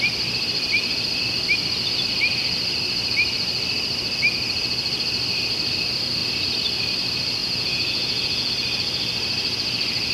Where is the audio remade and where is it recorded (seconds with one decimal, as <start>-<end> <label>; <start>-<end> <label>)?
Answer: 0.0-7.4 recorded; 7.4-8.5 remade; 8.5-10.1 recorded